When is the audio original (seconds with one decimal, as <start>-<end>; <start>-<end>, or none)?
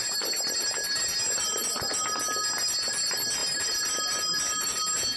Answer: 0.0-5.2